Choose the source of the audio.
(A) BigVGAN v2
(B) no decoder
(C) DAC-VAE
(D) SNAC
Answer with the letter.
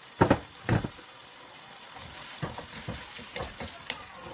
B